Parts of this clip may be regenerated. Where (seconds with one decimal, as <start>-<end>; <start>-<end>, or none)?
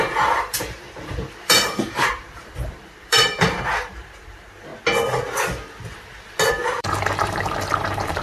0.0-4.7; 6.5-8.2